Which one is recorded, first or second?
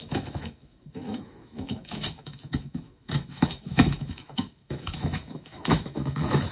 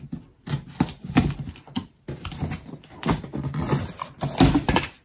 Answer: second